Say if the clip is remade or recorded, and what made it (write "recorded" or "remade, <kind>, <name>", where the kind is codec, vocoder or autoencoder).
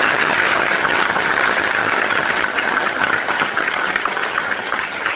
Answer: remade, vocoder, HiFi-GAN